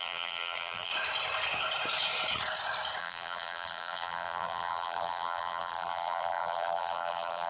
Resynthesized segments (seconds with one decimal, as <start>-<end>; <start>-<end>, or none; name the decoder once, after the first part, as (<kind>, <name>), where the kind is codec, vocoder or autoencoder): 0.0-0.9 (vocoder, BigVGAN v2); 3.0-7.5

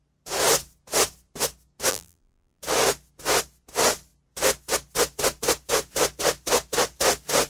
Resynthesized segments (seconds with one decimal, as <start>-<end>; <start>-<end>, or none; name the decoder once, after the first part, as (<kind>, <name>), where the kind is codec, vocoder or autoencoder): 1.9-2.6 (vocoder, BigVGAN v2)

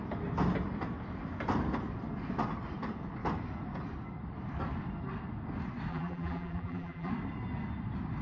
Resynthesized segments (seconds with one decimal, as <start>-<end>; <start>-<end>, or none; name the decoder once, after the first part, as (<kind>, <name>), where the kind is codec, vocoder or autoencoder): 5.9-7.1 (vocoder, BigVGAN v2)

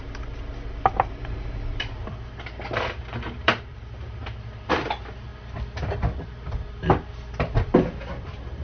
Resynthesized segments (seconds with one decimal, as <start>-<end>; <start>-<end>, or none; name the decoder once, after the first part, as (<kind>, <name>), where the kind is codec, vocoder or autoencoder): 0.0-5.3 (vocoder, BigVGAN v2); 6.7-8.6

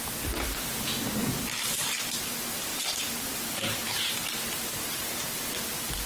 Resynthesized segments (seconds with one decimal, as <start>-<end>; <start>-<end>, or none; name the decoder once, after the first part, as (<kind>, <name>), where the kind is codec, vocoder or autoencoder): 1.2-1.8 (vocoder, BigVGAN v2)

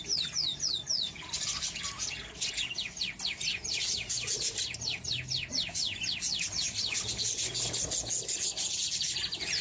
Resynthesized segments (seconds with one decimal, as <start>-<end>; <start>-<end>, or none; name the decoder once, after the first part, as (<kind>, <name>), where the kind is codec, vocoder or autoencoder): none

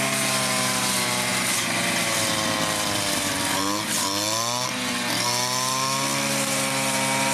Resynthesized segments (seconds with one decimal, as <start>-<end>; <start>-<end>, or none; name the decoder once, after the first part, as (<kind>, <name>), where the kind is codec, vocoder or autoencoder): none

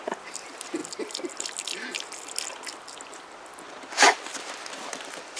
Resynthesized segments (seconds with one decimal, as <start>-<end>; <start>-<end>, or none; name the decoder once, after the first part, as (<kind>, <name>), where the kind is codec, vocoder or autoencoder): 0.0-0.8 (vocoder, BigVGAN v2); 2.8-5.4